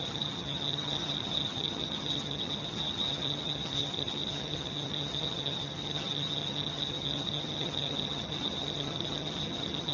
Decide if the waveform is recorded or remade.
remade